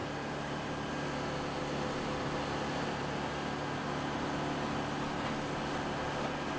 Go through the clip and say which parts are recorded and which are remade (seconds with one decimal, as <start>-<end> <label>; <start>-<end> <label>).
0.0-6.6 recorded